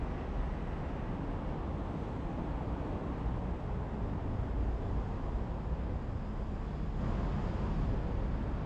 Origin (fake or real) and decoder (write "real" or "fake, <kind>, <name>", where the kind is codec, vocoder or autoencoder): real